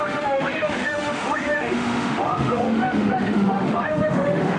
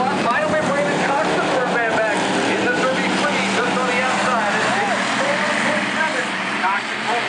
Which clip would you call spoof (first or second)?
first